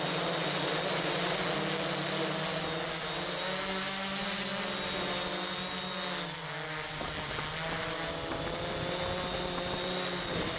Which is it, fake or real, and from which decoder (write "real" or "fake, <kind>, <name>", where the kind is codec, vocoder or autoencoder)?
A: real